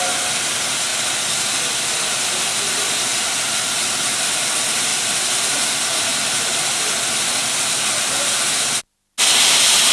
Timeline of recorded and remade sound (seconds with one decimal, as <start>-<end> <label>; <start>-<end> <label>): 0.0-0.9 recorded; 0.9-2.1 remade; 2.1-4.9 recorded; 4.9-5.5 remade; 5.5-9.9 recorded